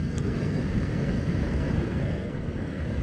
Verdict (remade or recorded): remade